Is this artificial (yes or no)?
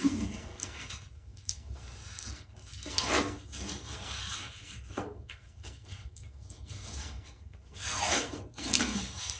yes